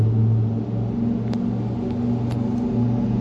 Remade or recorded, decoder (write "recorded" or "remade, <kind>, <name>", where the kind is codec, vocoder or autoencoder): recorded